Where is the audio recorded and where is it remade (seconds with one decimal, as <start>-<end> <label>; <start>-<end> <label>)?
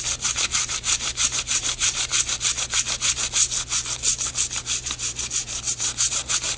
0.0-2.1 remade; 2.1-6.1 recorded; 6.1-6.6 remade